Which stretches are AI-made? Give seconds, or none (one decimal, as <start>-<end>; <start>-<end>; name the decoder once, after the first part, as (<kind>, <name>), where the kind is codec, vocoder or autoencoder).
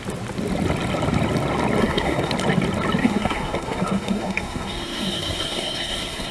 1.8-2.3 (codec, SNAC); 3.0-6.3